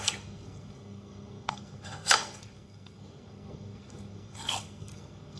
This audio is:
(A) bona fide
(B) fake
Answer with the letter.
B